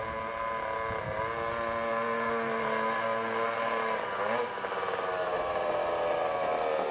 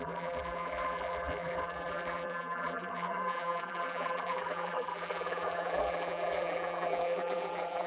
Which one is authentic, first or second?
first